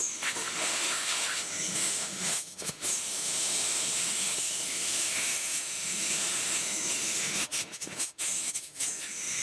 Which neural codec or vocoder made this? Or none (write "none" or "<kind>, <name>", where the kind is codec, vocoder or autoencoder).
autoencoder, DAC-VAE